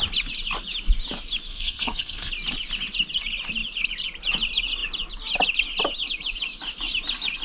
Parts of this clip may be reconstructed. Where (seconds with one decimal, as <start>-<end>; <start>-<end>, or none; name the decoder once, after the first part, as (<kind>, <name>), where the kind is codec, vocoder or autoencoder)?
1.5-2.3 (codec, SNAC)